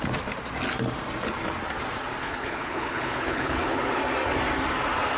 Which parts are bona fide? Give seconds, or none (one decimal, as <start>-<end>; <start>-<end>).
0.0-2.2; 4.0-5.2